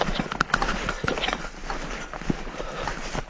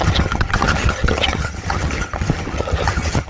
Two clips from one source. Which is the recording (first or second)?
first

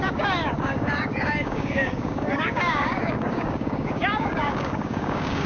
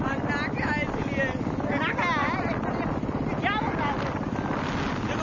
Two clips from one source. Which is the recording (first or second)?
second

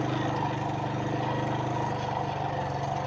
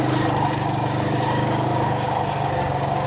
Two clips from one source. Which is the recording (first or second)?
first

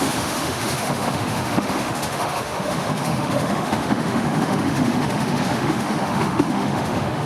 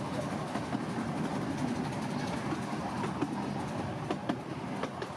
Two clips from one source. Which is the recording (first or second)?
second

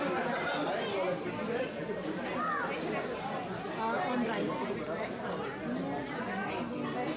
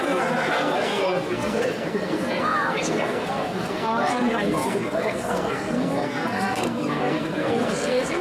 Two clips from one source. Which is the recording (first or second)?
first